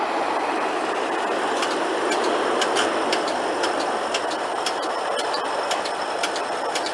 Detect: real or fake real